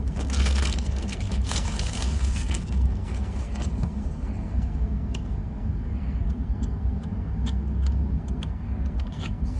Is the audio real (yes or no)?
no